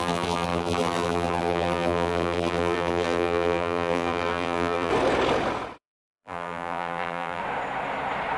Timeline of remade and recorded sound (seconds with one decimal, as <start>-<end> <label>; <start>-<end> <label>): 0.0-4.9 remade; 4.9-5.8 recorded; 5.8-7.4 remade; 7.4-8.4 recorded